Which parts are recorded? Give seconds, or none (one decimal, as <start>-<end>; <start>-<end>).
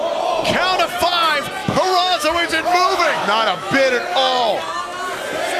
0.0-1.6; 3.7-5.6